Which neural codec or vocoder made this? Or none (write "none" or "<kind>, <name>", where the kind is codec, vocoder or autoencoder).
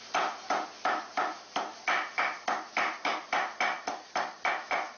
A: none